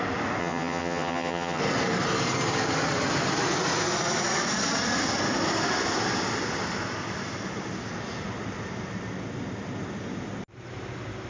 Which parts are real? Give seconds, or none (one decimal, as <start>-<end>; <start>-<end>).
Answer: 0.0-0.4; 1.6-11.3